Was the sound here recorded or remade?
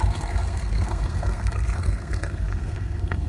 remade